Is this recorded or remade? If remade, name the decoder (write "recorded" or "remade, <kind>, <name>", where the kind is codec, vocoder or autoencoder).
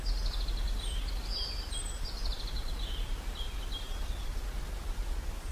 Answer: recorded